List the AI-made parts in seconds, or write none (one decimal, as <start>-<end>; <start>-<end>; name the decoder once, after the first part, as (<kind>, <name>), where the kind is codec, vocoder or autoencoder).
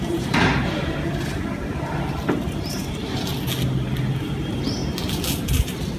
0.0-3.3 (vocoder, BigVGAN v2); 4.2-4.8